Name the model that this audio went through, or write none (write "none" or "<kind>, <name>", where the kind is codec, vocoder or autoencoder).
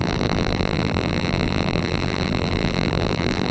vocoder, BigVGAN v2